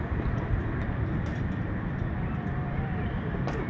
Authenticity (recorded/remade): recorded